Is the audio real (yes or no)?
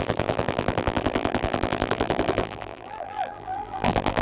no